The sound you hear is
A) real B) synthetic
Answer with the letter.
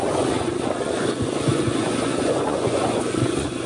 B